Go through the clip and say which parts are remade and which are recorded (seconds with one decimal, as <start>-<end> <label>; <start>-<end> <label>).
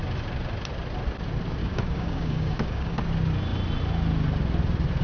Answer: 0.0-1.6 recorded; 1.6-3.0 remade; 3.0-5.0 recorded